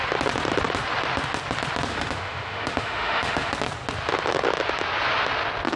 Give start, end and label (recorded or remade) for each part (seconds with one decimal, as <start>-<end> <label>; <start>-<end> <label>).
0.0-1.9 recorded; 1.9-3.5 remade; 3.5-5.8 recorded